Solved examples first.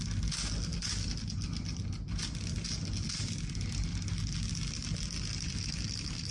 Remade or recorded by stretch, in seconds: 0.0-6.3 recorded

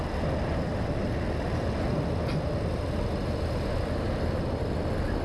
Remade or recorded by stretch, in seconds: 0.0-5.2 recorded

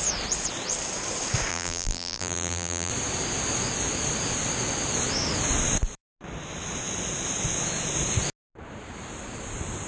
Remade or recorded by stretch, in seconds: 0.0-1.5 recorded; 1.5-2.9 remade; 2.9-9.9 recorded

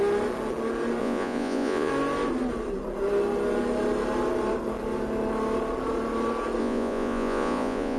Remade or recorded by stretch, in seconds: 0.0-1.0 recorded; 1.0-1.9 remade; 1.9-6.6 recorded; 6.6-8.0 remade

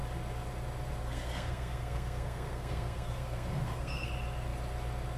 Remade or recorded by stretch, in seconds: 0.0-1.0 recorded; 1.0-4.1 remade; 4.1-5.2 recorded

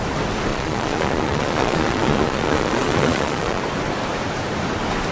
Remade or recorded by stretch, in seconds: 0.0-0.5 recorded; 0.5-3.6 remade; 3.6-5.1 recorded

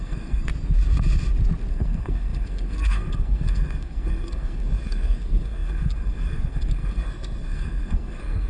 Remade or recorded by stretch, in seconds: 0.0-0.5 remade; 0.5-1.7 recorded; 1.7-8.5 remade

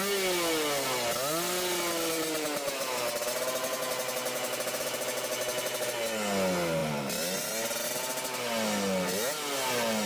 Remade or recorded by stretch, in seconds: 0.0-10.1 recorded